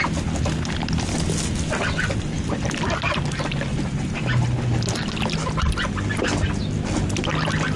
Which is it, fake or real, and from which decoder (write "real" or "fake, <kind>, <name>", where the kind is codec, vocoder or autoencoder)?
real